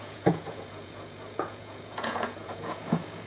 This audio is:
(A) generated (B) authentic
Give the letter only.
A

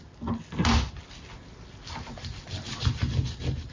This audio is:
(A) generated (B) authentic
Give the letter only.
B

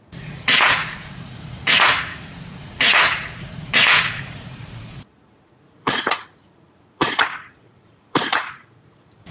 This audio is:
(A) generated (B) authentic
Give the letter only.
A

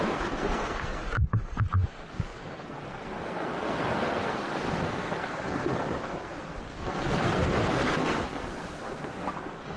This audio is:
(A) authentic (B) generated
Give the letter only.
B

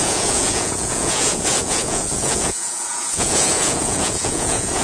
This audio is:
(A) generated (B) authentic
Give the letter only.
A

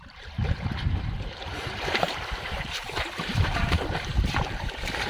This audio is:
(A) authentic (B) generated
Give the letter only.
B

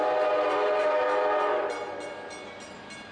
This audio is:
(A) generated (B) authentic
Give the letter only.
B